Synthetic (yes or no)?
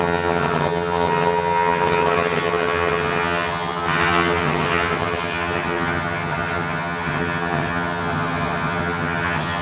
yes